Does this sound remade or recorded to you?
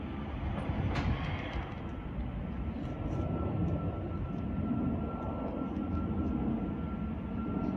recorded